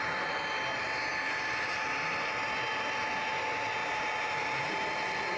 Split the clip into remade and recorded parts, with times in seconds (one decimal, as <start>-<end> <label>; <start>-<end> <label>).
0.0-3.8 recorded; 3.8-4.7 remade; 4.7-5.4 recorded